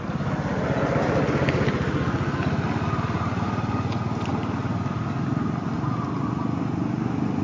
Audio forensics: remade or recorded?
recorded